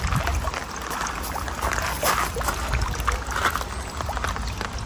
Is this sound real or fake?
real